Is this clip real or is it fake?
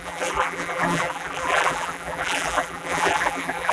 fake